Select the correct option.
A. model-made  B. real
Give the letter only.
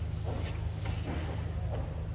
B